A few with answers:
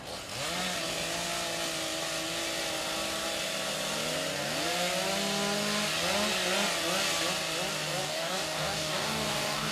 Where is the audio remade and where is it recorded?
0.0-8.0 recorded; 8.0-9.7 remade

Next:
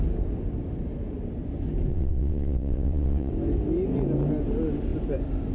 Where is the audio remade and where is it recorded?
0.0-1.9 recorded; 1.9-3.3 remade; 3.3-5.5 recorded

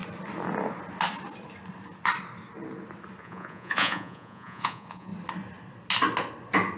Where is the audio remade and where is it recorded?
0.0-3.2 recorded; 3.2-5.1 remade; 5.1-6.8 recorded

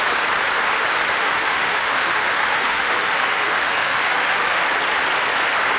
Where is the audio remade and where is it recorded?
0.0-1.2 recorded; 1.2-4.7 remade; 4.7-5.8 recorded

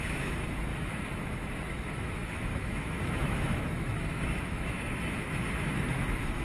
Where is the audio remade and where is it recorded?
0.0-6.4 remade

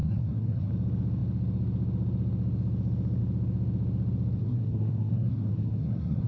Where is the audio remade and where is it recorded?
0.0-0.7 remade; 0.7-4.4 recorded; 4.4-6.3 remade